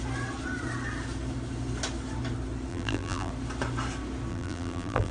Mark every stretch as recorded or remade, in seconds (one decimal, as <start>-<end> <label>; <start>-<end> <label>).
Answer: 0.0-2.7 recorded; 2.7-3.3 remade; 3.3-4.3 recorded; 4.3-5.1 remade